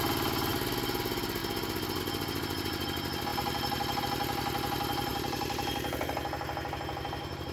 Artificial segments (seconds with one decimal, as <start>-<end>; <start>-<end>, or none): 3.3-4.0; 5.1-6.1